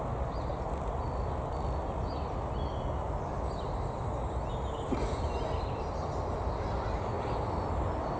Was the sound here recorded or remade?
recorded